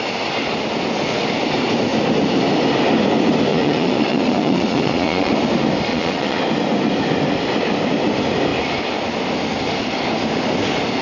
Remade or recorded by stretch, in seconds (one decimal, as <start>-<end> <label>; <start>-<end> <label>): 0.0-3.5 recorded; 3.5-5.3 remade; 5.3-5.9 recorded; 5.9-6.4 remade; 6.4-11.0 recorded